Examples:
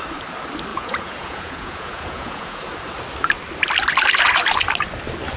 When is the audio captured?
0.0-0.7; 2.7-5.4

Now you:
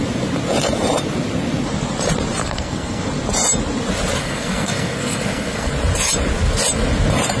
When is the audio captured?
0.0-2.4; 3.0-4.2; 5.7-7.4